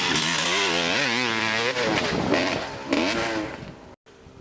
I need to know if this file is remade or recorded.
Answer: recorded